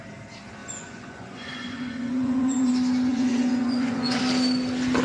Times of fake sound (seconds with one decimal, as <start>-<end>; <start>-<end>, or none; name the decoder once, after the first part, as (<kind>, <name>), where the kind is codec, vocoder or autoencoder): 0.6-2.7 (vocoder, Vocos); 3.1-4.2